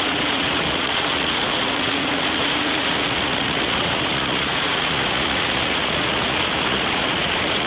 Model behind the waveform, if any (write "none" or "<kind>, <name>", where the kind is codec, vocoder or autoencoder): vocoder, Vocos